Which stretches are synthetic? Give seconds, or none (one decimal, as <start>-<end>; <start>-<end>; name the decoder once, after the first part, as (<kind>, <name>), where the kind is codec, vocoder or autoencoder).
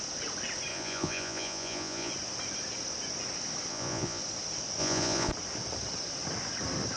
0.7-2.1 (vocoder, Vocos); 3.7-4.2; 4.8-5.3